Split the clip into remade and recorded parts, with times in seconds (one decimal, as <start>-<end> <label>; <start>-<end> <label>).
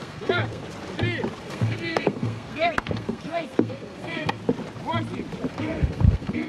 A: 0.0-0.6 remade; 0.6-1.4 recorded; 1.4-4.4 remade; 4.4-5.5 recorded; 5.5-6.5 remade